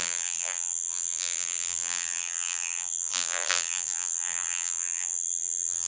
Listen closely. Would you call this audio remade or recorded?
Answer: remade